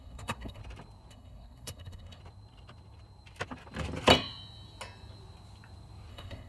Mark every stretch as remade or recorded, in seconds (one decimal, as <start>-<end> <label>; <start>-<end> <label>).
0.0-0.6 remade; 0.6-1.1 recorded; 1.1-2.2 remade; 2.2-6.1 recorded; 6.1-6.5 remade